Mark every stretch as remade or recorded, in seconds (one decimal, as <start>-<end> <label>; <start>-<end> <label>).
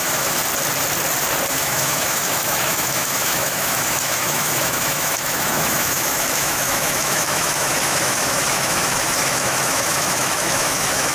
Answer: 0.0-0.4 remade; 0.4-1.5 recorded; 1.5-11.1 remade